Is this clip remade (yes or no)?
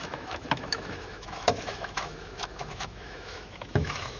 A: yes